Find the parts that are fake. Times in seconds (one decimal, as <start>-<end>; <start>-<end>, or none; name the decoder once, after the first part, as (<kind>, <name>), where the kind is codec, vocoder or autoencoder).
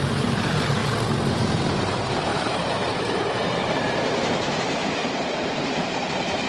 0.0-0.8 (vocoder, BigVGAN v2); 1.3-6.5